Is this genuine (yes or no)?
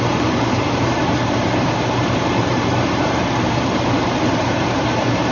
no